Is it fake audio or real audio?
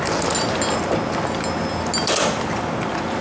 real